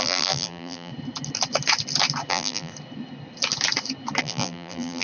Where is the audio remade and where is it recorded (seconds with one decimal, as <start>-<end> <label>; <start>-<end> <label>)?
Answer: 0.0-0.9 remade; 0.9-2.3 recorded; 2.3-2.7 remade; 2.7-4.2 recorded; 4.2-5.0 remade